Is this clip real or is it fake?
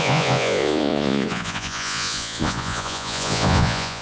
fake